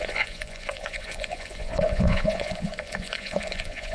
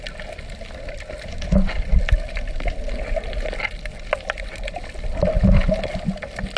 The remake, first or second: first